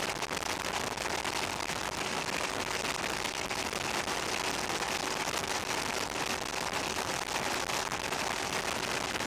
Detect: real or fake real